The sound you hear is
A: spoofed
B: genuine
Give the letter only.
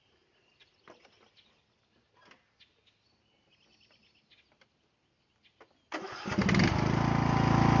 B